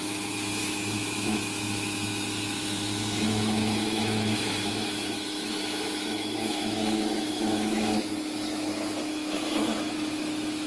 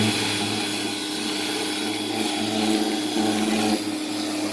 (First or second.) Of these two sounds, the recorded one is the second